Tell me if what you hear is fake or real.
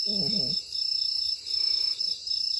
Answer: real